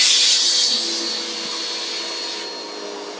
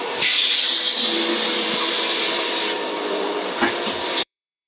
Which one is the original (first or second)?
first